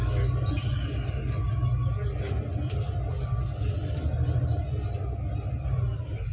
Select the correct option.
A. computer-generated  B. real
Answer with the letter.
B